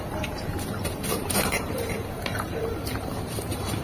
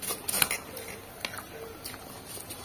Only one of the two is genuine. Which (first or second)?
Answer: second